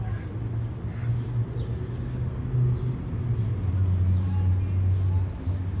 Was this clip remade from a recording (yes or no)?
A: no